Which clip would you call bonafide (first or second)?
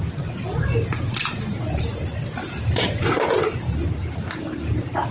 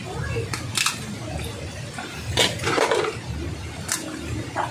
second